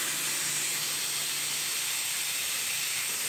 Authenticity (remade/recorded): recorded